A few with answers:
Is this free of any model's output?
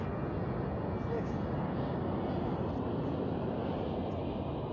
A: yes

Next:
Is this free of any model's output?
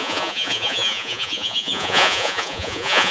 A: no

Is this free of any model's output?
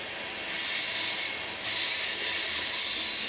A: yes